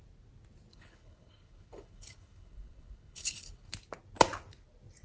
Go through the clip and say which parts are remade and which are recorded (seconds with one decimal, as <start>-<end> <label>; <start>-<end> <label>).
0.0-0.7 recorded; 0.7-3.7 remade; 3.7-5.0 recorded